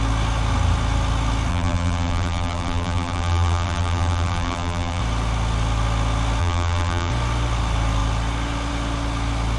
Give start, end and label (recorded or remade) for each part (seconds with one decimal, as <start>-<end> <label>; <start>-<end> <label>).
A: 0.0-1.5 recorded; 1.5-5.0 remade; 5.0-6.4 recorded; 6.4-7.1 remade; 7.1-9.6 recorded